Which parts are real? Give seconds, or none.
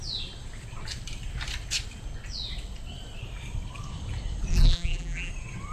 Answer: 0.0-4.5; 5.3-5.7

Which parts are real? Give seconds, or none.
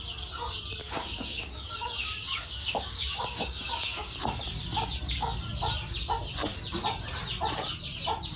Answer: 0.0-0.8; 4.2-8.4